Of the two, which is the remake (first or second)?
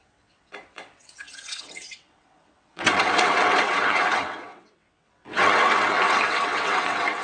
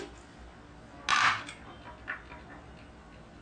first